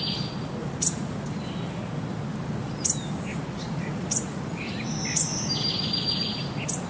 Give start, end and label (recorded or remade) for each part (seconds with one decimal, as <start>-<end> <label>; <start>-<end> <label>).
0.0-0.6 recorded; 0.6-1.4 remade; 1.4-3.3 recorded; 3.3-4.4 remade; 4.4-6.9 recorded